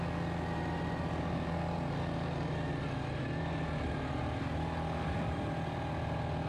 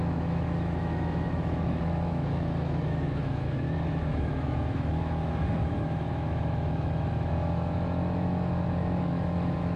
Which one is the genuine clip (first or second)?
first